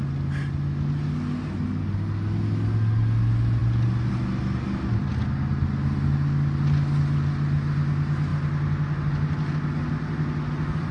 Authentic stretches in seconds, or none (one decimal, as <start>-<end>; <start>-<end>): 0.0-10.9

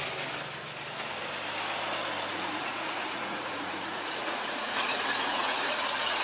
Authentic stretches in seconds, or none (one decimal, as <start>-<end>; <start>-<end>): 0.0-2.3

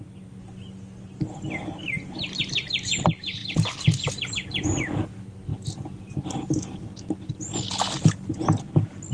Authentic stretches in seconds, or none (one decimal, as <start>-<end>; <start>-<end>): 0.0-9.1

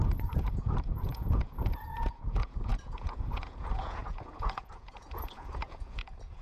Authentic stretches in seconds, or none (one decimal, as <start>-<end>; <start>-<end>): none